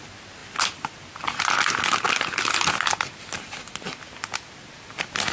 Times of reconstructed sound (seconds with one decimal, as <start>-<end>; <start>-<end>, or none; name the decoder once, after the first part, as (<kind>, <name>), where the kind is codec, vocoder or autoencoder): none